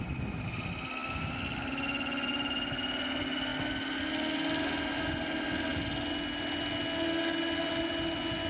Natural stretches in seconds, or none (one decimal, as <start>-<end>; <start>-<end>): 0.0-8.5